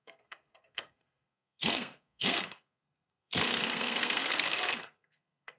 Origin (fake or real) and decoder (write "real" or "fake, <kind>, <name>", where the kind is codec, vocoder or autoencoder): fake, codec, SNAC